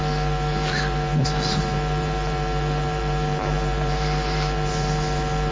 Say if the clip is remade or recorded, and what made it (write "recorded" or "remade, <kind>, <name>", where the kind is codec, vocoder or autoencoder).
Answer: remade, vocoder, BigVGAN v2